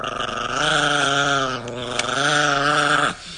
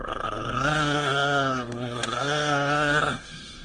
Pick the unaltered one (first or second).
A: first